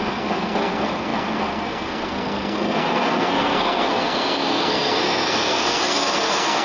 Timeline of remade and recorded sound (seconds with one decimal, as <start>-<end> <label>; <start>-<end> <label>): 0.0-6.6 remade